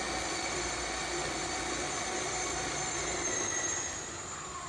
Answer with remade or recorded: recorded